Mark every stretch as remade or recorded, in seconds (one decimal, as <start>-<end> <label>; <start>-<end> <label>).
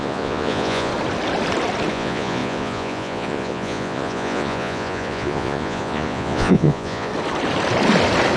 0.0-0.9 remade; 0.9-1.9 recorded; 1.9-7.1 remade; 7.1-8.4 recorded